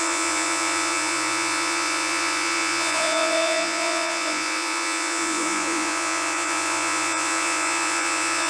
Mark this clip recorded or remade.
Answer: remade